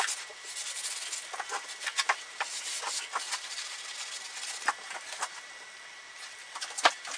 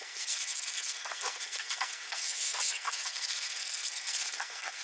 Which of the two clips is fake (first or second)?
second